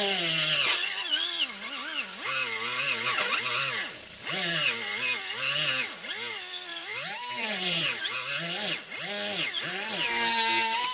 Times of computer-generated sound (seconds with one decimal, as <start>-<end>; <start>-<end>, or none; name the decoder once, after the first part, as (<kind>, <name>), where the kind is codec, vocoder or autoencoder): 6.7-8.0 (vocoder, BigVGAN v2)